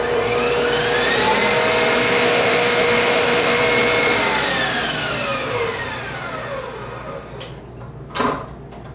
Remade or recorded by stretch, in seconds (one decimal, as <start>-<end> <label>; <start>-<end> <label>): 0.0-2.1 recorded; 2.1-3.6 remade; 3.6-8.9 recorded